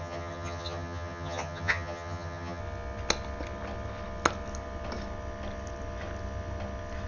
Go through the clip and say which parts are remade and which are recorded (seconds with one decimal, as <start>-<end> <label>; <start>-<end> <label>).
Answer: 0.0-2.6 remade; 2.6-7.1 recorded